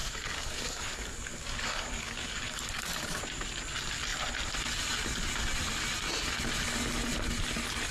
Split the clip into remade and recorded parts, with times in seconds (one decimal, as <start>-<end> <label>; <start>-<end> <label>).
0.0-3.2 remade; 3.2-7.9 recorded